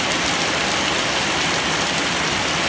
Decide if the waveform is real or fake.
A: real